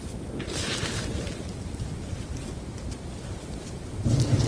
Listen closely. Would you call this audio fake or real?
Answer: real